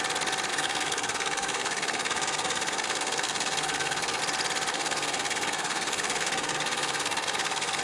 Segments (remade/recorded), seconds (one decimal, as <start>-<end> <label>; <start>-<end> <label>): 0.0-0.5 recorded; 0.5-4.2 remade; 4.2-4.7 recorded; 4.7-7.8 remade